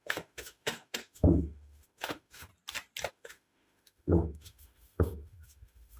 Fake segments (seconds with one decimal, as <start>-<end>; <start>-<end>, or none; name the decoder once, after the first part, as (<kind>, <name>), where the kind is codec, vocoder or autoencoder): 0.0-2.5 (autoencoder, DAC-VAE); 3.1-6.0

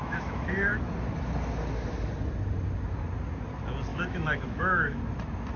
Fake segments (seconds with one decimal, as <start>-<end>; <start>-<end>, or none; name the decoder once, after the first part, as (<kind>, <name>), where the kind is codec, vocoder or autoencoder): 0.0-0.9 (autoencoder, DAC-VAE); 3.9-5.0

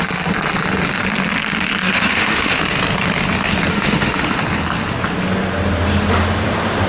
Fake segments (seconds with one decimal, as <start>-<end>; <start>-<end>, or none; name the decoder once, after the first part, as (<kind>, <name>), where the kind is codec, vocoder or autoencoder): 1.8-2.6 (autoencoder, DAC-VAE); 3.7-4.4

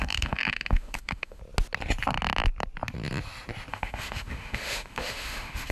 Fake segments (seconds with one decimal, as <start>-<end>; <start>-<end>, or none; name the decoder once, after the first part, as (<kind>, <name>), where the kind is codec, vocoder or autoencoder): 0.0-1.4 (autoencoder, DAC-VAE); 3.7-5.7

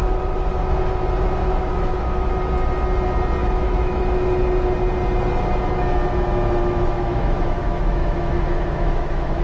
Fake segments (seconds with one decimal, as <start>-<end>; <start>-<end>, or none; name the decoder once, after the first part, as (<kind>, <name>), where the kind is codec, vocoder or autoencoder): 1.4-2.3 (autoencoder, DAC-VAE); 3.4-4.0; 6.6-9.4

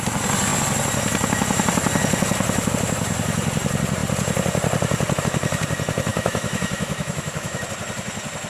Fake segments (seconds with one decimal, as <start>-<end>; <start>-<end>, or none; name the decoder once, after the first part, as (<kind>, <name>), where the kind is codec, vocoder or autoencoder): 6.1-7.6 (autoencoder, DAC-VAE)

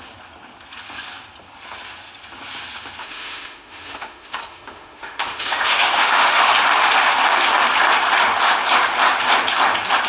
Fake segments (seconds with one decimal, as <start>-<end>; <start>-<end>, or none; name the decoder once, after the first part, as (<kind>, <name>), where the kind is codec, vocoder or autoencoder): 3.0-6.5 (autoencoder, DAC-VAE)

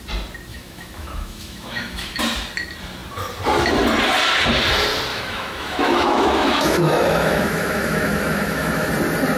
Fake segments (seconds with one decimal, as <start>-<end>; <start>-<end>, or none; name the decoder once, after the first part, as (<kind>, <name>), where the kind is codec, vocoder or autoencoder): 0.5-2.2 (autoencoder, DAC-VAE); 5.1-8.9